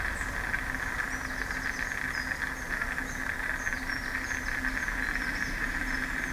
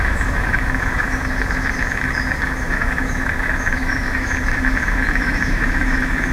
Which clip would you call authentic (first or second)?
first